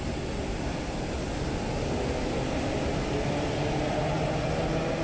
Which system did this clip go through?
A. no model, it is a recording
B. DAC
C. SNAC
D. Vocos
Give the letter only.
A